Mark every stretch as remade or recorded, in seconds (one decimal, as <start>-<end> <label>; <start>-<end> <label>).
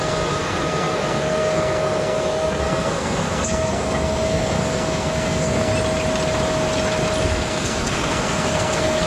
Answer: 0.0-5.7 remade; 5.7-7.2 recorded; 7.2-9.1 remade